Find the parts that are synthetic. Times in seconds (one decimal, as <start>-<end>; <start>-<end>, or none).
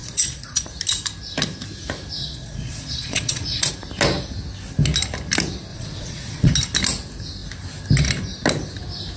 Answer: 0.0-0.7; 2.2-3.7; 5.7-6.5